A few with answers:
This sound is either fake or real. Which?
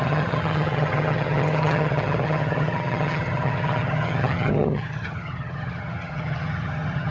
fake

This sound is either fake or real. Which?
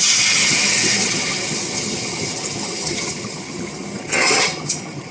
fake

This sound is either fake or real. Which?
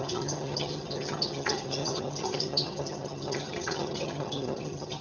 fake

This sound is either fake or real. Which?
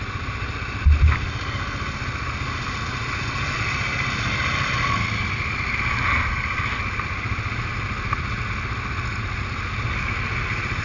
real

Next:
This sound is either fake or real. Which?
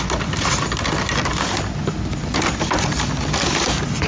real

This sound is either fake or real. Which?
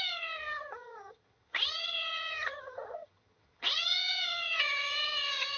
fake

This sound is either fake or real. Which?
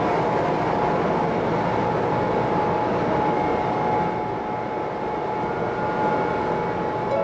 real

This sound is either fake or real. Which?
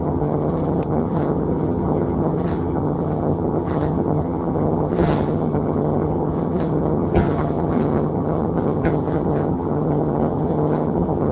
fake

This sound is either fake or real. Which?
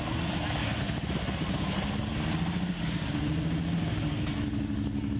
real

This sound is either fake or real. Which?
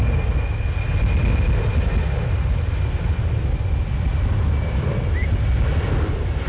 real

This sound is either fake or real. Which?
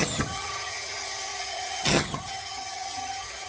fake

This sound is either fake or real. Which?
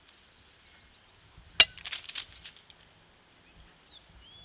real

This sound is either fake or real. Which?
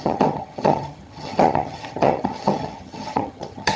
fake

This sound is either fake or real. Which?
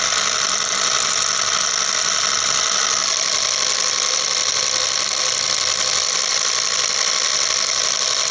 real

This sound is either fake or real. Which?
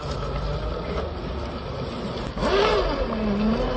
real